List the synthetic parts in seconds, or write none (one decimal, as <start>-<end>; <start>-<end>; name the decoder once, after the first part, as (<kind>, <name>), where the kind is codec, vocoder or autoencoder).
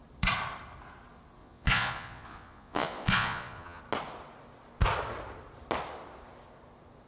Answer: 1.4-3.8 (vocoder, Vocos)